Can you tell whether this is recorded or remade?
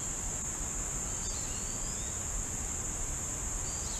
recorded